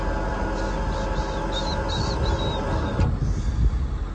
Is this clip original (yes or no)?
yes